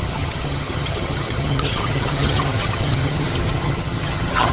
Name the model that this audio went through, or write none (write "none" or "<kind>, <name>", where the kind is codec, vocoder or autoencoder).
vocoder, HiFi-GAN